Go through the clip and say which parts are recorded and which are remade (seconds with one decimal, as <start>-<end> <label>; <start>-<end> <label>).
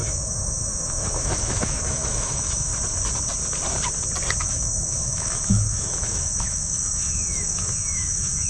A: 0.0-2.7 remade; 2.7-4.4 recorded; 4.4-8.5 remade